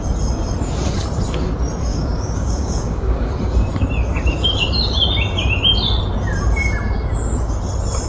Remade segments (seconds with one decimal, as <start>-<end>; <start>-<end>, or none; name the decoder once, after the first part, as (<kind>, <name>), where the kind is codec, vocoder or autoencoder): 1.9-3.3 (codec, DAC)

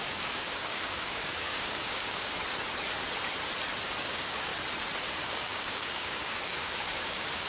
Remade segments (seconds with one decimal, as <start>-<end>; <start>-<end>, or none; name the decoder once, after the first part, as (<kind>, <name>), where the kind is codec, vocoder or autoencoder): 0.0-2.4 (codec, DAC); 4.0-4.5; 5.2-7.5

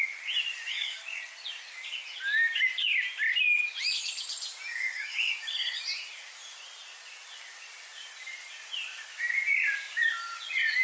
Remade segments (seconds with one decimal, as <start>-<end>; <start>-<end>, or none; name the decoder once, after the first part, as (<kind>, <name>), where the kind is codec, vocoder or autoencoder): 0.7-1.2 (codec, DAC); 4.7-5.4

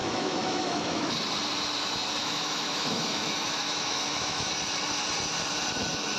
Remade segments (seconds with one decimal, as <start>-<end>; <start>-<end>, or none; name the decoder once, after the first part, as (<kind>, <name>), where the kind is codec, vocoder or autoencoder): 0.0-1.1 (autoencoder, DAC-VAE); 2.2-4.5